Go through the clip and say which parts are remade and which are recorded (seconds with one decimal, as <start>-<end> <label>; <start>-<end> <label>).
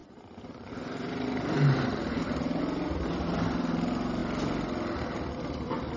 0.0-2.6 remade; 2.6-6.0 recorded